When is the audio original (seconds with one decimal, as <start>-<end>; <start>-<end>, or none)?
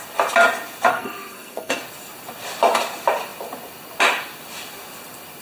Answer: 0.0-0.9; 1.8-5.4